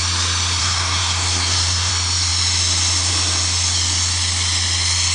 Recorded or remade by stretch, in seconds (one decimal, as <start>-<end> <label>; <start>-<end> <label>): 0.0-0.6 recorded; 0.6-1.9 remade; 1.9-5.1 recorded